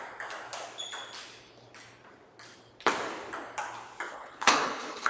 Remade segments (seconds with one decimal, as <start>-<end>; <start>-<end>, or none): 4.1-5.1